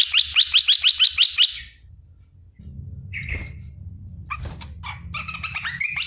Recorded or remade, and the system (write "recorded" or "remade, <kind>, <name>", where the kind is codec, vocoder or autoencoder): recorded